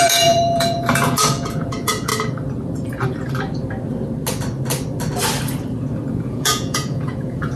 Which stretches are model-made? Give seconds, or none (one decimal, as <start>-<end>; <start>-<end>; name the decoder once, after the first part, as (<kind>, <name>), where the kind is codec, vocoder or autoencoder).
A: 0.0-2.1 (vocoder, Vocos); 6.1-7.6